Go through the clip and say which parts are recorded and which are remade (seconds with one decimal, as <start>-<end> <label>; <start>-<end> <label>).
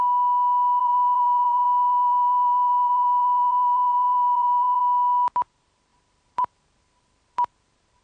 0.0-0.8 recorded; 0.8-4.8 remade; 4.8-5.9 recorded; 5.9-8.0 remade